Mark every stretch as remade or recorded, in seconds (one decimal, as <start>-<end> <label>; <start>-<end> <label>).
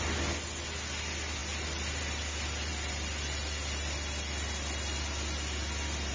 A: 0.0-6.1 recorded